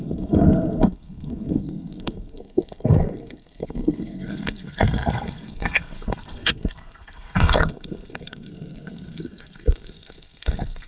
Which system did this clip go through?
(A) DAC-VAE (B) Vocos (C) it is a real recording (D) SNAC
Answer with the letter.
D